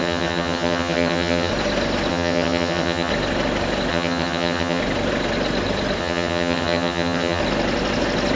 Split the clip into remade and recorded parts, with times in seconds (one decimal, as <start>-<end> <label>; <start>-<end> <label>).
0.0-1.5 remade; 1.5-2.1 recorded; 2.1-3.1 remade; 3.1-3.9 recorded; 3.9-4.8 remade; 4.8-6.0 recorded; 6.0-7.4 remade; 7.4-8.4 recorded